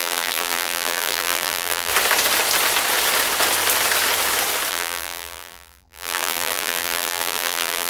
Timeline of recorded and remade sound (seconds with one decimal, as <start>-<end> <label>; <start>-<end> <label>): 0.0-1.9 remade; 1.9-4.7 recorded; 4.7-7.9 remade